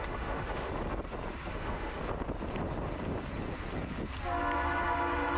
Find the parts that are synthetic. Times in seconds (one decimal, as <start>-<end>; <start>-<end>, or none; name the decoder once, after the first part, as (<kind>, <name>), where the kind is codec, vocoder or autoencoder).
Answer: 0.0-0.7 (autoencoder, DAC-VAE); 1.5-2.0